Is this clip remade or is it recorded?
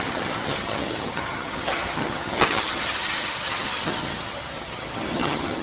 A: remade